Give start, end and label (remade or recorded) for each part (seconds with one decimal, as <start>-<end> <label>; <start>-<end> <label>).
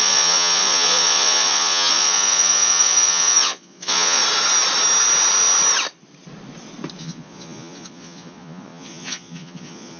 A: 0.0-4.2 remade; 4.2-7.0 recorded; 7.0-10.0 remade